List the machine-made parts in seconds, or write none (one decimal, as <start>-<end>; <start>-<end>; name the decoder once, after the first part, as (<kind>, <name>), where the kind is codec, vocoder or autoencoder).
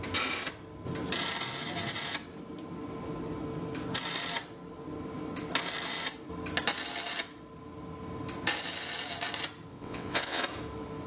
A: 9.7-10.4 (vocoder, WaveNeXt)